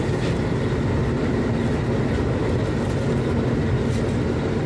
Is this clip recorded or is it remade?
recorded